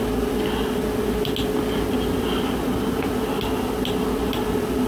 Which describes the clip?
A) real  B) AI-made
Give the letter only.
A